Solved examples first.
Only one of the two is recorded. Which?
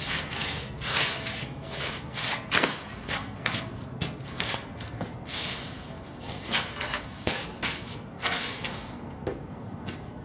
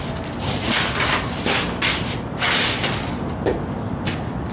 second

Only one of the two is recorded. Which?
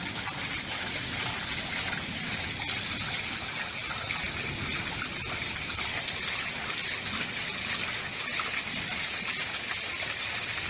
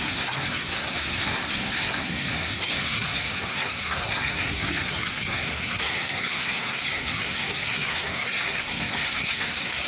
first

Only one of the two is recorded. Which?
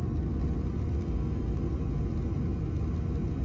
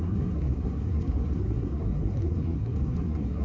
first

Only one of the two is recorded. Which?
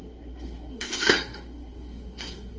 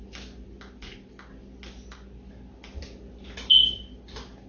second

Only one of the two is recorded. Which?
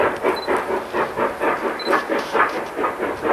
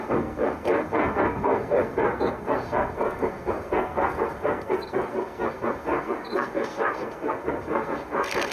first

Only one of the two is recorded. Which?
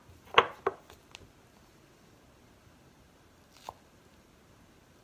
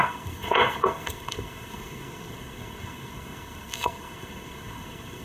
first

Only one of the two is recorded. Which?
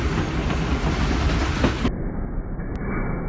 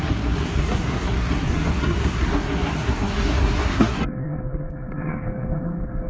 first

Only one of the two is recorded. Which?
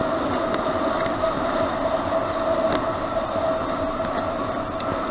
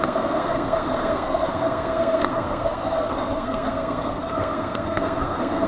first